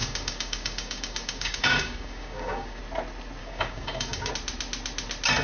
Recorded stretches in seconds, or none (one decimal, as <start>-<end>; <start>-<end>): 2.8-3.4; 4.3-5.4